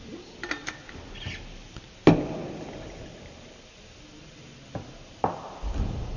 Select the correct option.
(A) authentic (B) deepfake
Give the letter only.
A